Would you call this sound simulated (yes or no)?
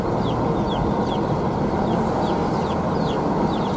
no